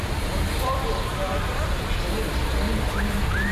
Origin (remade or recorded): recorded